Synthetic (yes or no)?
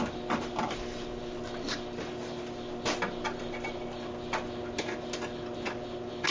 no